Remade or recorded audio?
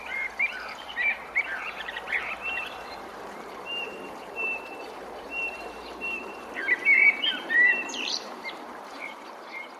remade